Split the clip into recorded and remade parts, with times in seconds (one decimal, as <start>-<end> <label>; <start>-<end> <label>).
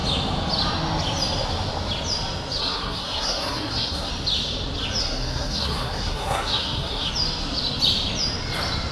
0.0-2.6 recorded; 2.6-4.1 remade; 4.1-5.0 recorded; 5.0-7.1 remade; 7.1-8.9 recorded